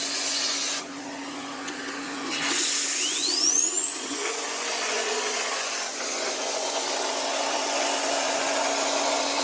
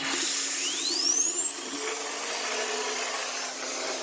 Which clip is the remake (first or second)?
first